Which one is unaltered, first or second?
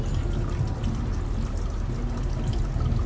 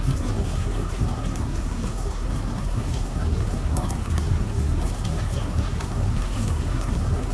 first